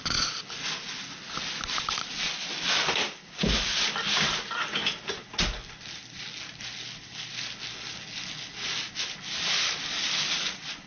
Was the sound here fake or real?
real